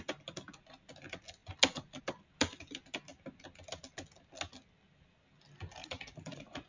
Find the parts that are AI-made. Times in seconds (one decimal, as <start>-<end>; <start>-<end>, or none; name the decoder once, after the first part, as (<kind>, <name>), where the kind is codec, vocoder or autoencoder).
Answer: 5.8-6.7 (vocoder, Vocos)